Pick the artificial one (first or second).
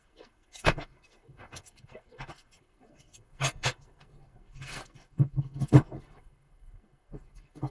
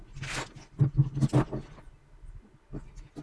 first